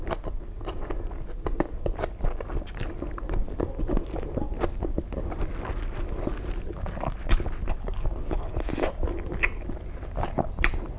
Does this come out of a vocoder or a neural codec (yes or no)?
no